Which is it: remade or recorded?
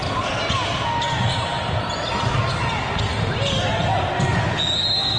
recorded